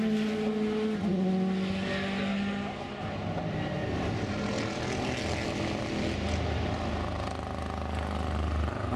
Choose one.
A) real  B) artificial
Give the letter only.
A